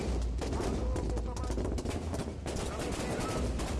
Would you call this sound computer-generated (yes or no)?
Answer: no